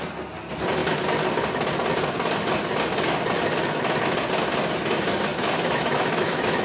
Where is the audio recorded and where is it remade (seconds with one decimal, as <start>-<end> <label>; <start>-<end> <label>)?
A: 0.0-5.3 recorded; 5.3-6.6 remade